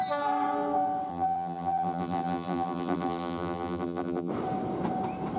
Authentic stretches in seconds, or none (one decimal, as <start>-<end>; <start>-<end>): 0.0-1.1; 4.3-5.4